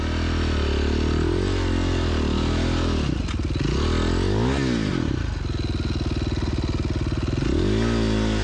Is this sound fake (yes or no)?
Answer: no